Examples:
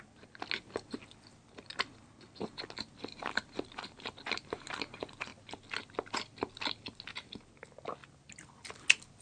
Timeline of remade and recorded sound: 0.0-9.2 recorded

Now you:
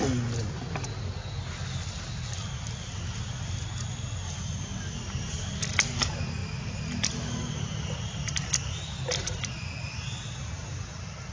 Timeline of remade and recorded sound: 0.0-11.3 recorded

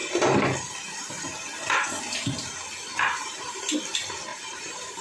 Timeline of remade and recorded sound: 0.0-2.9 recorded; 2.9-3.6 remade; 3.6-4.3 recorded; 4.3-5.0 remade

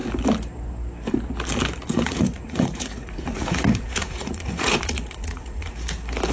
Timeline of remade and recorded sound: 0.0-1.9 recorded; 1.9-5.7 remade; 5.7-6.3 recorded

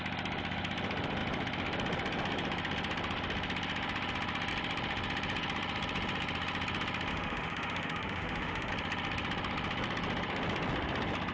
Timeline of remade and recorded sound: 0.0-7.1 recorded; 7.1-8.7 remade; 8.7-11.3 recorded

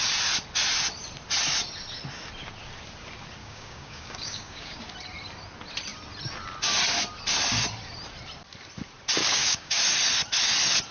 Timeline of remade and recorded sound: 0.0-3.4 recorded; 3.4-4.8 remade; 4.8-9.2 recorded; 9.2-9.8 remade; 9.8-10.9 recorded

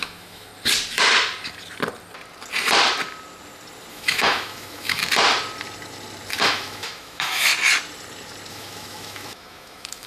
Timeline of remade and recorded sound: 0.0-0.5 remade; 0.5-3.9 recorded; 3.9-5.0 remade; 5.0-6.3 recorded; 6.3-7.5 remade; 7.5-8.5 recorded; 8.5-10.1 remade

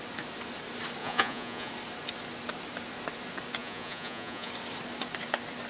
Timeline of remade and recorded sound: 0.0-1.0 recorded; 1.0-1.7 remade; 1.7-3.6 recorded; 3.6-4.5 remade; 4.5-5.7 recorded